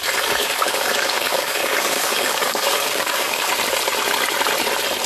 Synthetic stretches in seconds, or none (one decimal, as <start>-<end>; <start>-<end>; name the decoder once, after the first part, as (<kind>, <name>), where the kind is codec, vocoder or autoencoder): 0.4-3.5 (codec, DAC)